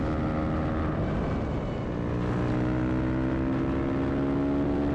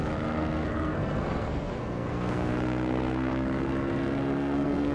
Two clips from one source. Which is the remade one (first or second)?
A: second